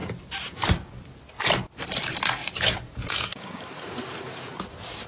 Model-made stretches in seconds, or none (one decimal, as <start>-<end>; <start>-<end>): 2.4-3.6